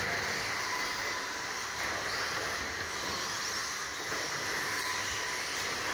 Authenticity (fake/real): real